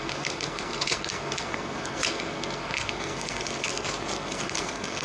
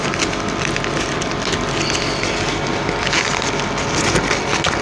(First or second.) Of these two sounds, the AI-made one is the first